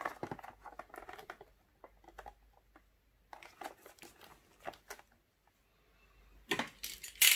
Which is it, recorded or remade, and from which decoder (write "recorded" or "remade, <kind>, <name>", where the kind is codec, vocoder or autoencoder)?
recorded